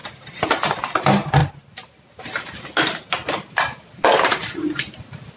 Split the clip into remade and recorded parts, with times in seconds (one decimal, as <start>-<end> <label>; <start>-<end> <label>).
0.0-0.8 remade; 0.8-1.4 recorded; 1.4-2.2 remade; 2.2-3.2 recorded; 3.2-4.0 remade; 4.0-5.4 recorded